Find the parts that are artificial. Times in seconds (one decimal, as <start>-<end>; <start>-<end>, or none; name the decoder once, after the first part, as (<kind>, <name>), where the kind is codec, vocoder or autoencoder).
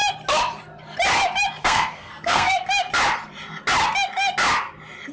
1.6-2.7 (codec, SNAC)